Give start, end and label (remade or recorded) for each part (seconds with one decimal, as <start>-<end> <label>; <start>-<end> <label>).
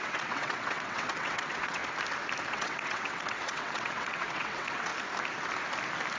0.0-1.8 remade; 1.8-2.5 recorded; 2.5-4.9 remade; 4.9-6.2 recorded